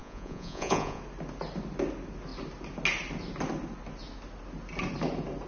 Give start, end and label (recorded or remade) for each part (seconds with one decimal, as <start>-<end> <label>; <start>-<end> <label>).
0.0-1.0 remade; 1.0-5.5 recorded